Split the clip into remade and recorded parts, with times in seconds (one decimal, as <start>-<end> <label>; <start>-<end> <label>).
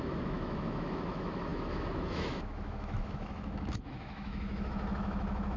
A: 0.0-5.6 remade